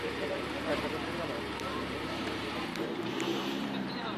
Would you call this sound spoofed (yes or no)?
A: yes